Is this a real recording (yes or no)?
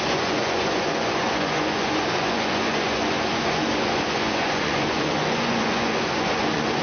no